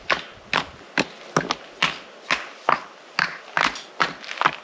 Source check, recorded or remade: recorded